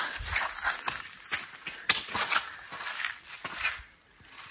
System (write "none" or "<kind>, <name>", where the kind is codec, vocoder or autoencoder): none